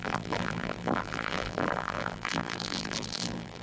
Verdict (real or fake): fake